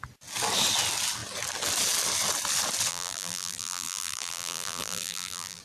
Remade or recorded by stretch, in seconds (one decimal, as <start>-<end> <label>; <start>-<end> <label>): 0.0-2.9 recorded; 2.9-5.6 remade